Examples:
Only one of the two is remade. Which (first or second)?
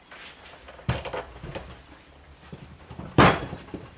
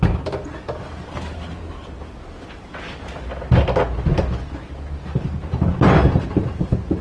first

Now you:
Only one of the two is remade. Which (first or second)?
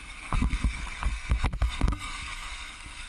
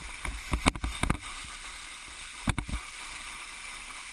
first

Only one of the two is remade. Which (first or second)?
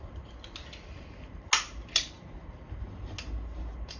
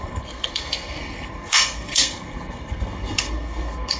second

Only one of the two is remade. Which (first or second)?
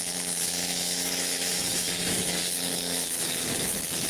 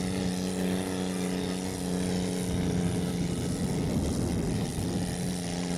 first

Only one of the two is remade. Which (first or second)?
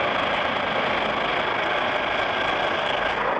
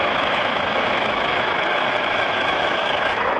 second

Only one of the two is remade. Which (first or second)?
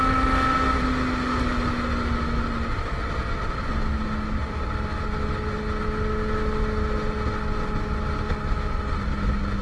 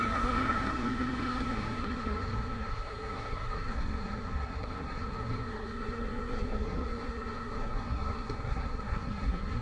second